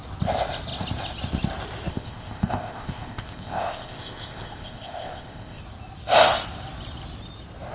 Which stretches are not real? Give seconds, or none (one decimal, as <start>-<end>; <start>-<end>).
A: 1.9-5.6